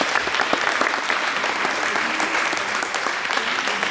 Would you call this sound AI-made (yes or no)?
yes